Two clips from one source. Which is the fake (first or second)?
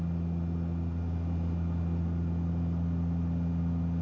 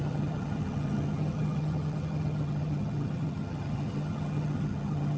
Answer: second